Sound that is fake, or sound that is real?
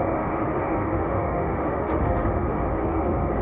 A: fake